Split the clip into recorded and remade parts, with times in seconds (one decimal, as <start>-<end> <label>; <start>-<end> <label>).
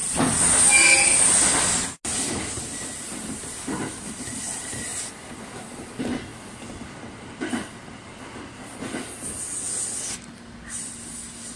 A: 0.0-11.6 recorded